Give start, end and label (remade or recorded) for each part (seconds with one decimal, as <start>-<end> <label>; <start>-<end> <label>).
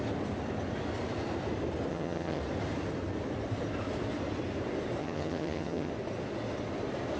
0.0-1.9 recorded; 1.9-2.4 remade; 2.4-5.0 recorded; 5.0-5.9 remade; 5.9-7.2 recorded